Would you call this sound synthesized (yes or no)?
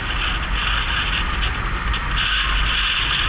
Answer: no